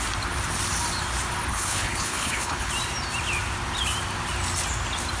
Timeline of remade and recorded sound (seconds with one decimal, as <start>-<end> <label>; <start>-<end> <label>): 0.0-1.5 recorded; 1.5-2.7 remade; 2.7-5.2 recorded